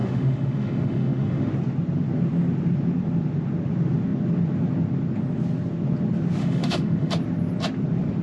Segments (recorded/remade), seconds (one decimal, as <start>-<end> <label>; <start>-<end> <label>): 0.0-1.5 remade; 1.5-6.4 recorded; 6.4-7.1 remade; 7.1-8.2 recorded